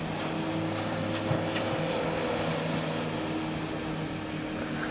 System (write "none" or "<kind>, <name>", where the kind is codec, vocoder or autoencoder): none